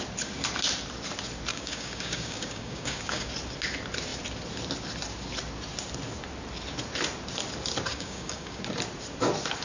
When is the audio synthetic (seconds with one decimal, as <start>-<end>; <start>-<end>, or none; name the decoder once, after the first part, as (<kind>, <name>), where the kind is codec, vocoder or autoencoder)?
1.5-3.3 (codec, DAC); 7.9-8.6